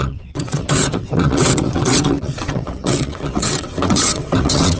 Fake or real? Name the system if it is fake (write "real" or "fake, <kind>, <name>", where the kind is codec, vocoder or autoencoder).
fake, vocoder, WaveNeXt